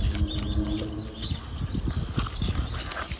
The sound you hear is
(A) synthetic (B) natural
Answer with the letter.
B